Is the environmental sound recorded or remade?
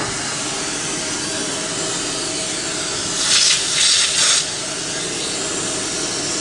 recorded